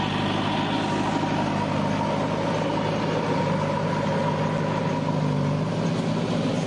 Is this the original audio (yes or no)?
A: yes